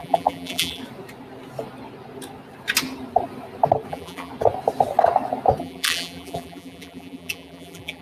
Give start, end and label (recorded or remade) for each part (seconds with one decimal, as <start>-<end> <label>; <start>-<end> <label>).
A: 0.0-0.8 remade; 0.8-3.9 recorded; 3.9-4.3 remade; 4.3-5.6 recorded; 5.6-8.0 remade